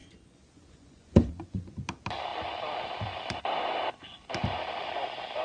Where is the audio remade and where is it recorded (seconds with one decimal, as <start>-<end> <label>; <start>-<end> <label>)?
0.0-1.7 remade; 1.7-5.4 recorded